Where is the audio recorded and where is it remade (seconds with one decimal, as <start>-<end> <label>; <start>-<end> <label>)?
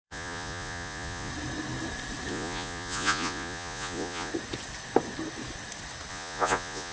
0.0-1.3 remade; 1.3-2.3 recorded; 2.3-4.3 remade; 4.3-6.1 recorded; 6.1-6.9 remade